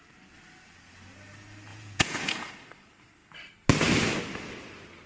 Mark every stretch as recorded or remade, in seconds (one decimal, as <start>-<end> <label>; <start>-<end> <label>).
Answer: 0.0-1.7 recorded; 1.7-2.5 remade; 2.5-5.1 recorded